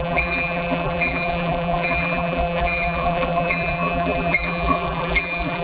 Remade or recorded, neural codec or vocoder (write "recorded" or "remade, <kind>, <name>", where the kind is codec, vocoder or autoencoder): remade, vocoder, BigVGAN v2